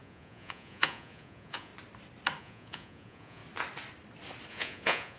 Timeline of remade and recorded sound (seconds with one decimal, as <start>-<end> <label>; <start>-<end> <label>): 0.0-1.7 remade; 1.7-2.4 recorded; 2.4-3.4 remade; 3.4-4.5 recorded; 4.5-5.2 remade